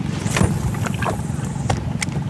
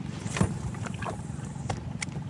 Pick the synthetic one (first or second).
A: second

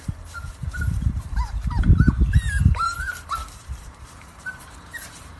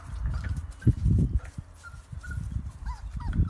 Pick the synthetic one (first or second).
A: first